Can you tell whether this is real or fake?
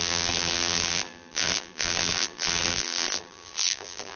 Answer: fake